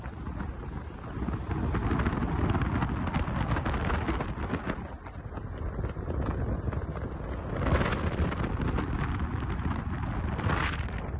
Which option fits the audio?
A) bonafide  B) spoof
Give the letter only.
A